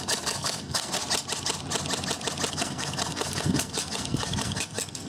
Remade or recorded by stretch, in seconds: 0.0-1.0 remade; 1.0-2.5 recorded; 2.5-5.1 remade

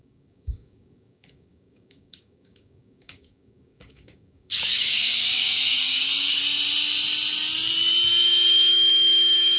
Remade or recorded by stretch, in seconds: 0.0-6.4 remade; 6.4-8.7 recorded; 8.7-9.6 remade

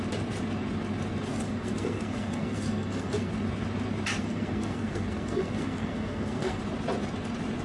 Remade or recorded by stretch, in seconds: 0.0-1.3 recorded; 1.3-3.3 remade; 3.3-4.2 recorded; 4.2-6.6 remade; 6.6-7.6 recorded

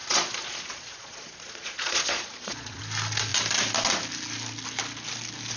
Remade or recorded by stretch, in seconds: 0.0-2.8 remade; 2.8-5.6 recorded

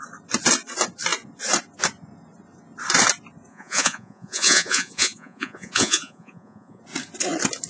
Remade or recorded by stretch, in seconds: 0.0-3.5 recorded; 3.5-6.8 remade; 6.8-7.7 recorded

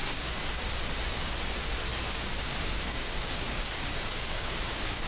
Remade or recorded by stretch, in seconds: 0.0-0.6 remade; 0.6-1.9 recorded; 1.9-5.1 remade

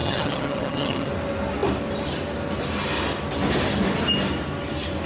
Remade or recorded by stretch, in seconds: 0.0-1.1 remade; 1.1-5.1 recorded